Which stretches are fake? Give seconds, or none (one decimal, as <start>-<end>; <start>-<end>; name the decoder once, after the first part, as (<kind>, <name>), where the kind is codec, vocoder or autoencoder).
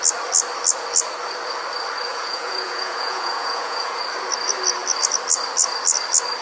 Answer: 2.1-4.0 (vocoder, Vocos)